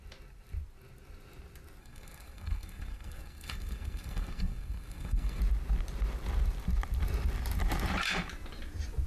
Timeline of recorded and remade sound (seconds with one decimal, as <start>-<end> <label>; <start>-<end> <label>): 0.0-1.8 recorded; 1.8-5.4 remade; 5.4-9.1 recorded